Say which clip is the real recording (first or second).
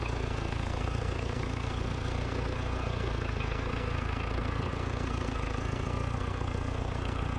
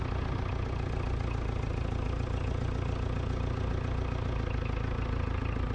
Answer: second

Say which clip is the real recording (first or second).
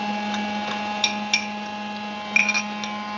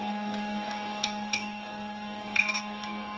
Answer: first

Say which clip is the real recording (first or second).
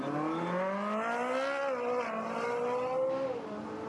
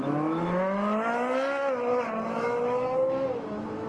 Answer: first